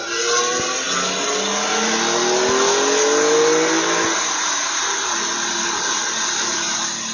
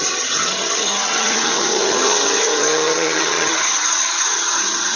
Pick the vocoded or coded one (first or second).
second